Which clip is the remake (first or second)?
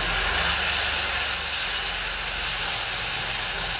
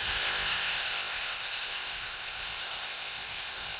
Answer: second